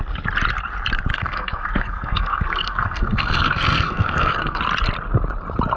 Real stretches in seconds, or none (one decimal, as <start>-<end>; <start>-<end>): 0.0-1.1; 4.6-5.8